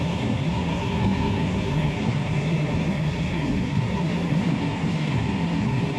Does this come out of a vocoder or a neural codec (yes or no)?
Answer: yes